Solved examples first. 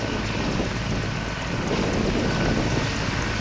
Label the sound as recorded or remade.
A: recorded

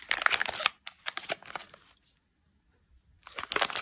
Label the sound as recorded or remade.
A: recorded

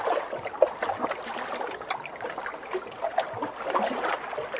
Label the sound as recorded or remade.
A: recorded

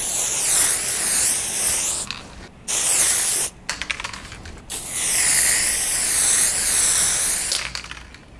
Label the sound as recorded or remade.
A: recorded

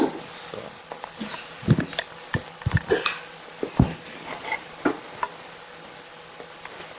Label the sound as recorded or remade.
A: recorded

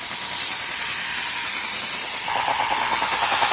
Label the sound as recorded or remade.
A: remade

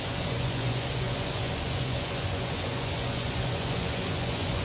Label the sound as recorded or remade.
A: remade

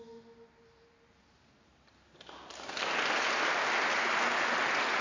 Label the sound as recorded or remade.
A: recorded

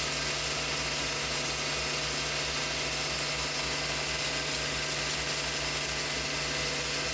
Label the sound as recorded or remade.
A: recorded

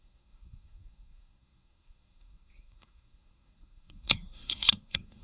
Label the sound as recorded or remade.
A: remade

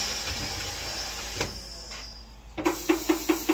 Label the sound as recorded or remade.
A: recorded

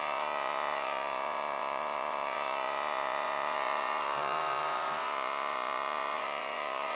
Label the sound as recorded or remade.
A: remade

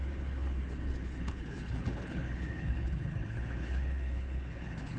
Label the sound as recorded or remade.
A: remade